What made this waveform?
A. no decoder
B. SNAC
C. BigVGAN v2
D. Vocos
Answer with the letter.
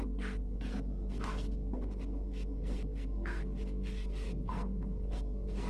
B